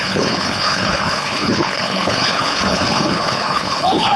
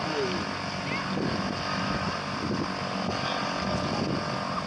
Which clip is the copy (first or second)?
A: first